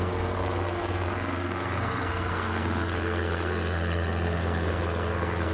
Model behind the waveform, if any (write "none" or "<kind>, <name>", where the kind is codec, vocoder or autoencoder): codec, SNAC